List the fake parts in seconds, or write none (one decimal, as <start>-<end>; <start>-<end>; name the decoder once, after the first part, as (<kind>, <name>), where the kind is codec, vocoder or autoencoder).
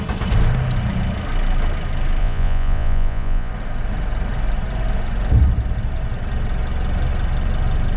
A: 2.2-3.5 (vocoder, Vocos)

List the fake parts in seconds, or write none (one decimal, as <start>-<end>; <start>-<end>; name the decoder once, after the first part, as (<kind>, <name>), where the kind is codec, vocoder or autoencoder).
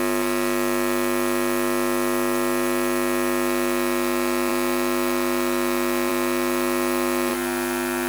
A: none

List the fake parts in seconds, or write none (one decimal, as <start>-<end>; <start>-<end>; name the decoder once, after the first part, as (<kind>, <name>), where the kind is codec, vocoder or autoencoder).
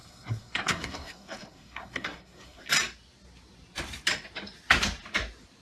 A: 0.0-2.7 (codec, SNAC)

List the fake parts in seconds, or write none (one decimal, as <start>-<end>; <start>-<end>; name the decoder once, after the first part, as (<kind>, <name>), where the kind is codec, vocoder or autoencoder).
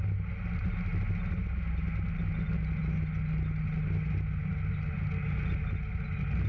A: none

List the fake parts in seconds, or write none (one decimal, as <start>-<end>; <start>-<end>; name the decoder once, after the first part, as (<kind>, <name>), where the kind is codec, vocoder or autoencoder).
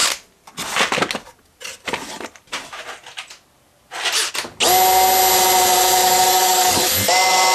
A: 6.0-6.9 (codec, DAC)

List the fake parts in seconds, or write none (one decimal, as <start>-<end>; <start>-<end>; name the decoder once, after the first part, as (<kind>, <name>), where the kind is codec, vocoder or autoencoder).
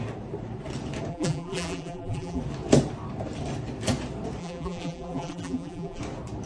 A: 1.1-2.4 (vocoder, BigVGAN v2); 4.4-6.0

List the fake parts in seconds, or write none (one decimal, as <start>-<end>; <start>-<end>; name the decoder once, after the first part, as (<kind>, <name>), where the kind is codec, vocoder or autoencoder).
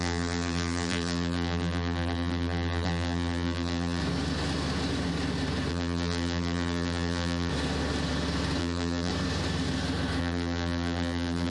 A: 0.0-4.0 (vocoder, BigVGAN v2); 5.7-7.5; 8.6-9.1; 10.2-11.5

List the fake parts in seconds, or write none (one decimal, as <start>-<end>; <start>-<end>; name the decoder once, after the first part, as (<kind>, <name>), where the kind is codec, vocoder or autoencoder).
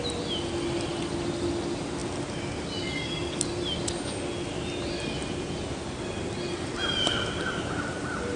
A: none